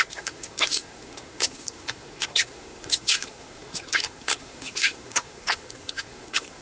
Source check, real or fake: fake